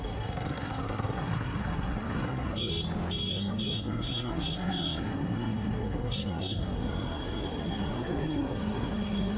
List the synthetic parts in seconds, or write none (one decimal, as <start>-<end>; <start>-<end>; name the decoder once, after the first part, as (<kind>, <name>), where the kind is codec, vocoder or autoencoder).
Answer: 0.0-2.7 (codec, SNAC); 3.3-9.4